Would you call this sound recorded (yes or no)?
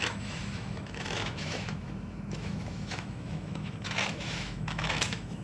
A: no